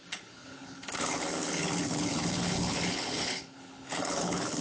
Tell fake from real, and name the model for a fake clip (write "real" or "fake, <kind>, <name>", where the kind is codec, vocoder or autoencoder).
fake, codec, HILCodec